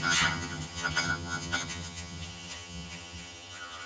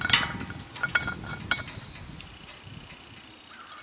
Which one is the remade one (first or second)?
first